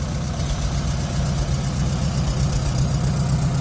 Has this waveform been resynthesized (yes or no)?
no